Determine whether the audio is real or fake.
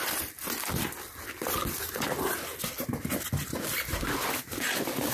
real